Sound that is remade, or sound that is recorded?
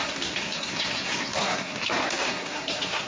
remade